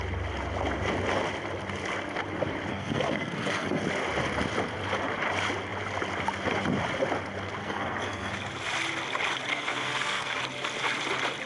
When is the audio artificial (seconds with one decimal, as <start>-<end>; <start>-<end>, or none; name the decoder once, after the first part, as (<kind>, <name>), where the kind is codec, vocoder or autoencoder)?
2.7-3.8 (codec, SNAC); 7.6-8.3; 9.5-10.4